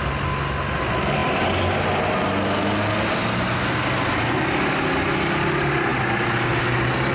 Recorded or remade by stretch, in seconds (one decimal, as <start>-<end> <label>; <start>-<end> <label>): 0.0-7.1 recorded